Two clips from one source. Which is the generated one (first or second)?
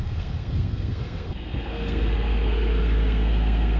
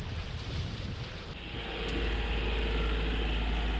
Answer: first